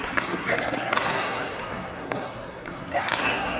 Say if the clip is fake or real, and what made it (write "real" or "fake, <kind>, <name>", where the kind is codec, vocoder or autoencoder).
fake, codec, SNAC